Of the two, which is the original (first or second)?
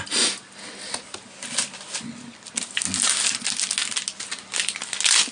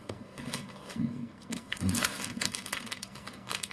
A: first